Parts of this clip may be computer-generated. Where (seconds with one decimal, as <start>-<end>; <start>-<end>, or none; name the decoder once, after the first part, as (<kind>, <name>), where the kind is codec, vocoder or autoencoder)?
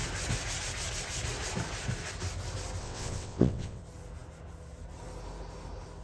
2.8-3.8 (vocoder, WaveNeXt)